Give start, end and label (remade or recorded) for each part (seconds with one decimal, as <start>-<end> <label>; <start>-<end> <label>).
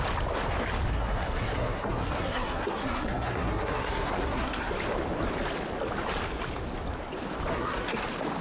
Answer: 0.0-0.9 recorded; 0.9-4.7 remade; 4.7-7.5 recorded; 7.5-8.0 remade; 8.0-8.4 recorded